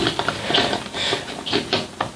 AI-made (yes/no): no